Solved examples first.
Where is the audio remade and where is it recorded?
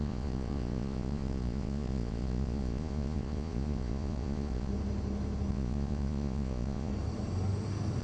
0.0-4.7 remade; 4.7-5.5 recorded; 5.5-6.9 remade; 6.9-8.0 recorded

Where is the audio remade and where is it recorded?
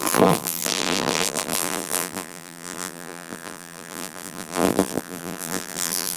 0.0-6.2 remade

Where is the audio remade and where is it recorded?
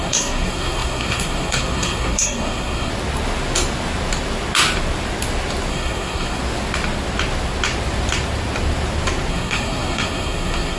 0.0-2.9 remade; 2.9-5.7 recorded; 5.7-6.4 remade; 6.4-9.3 recorded; 9.3-10.8 remade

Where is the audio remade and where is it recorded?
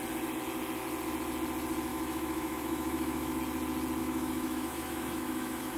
0.0-1.9 recorded; 1.9-3.4 remade; 3.4-4.0 recorded; 4.0-5.8 remade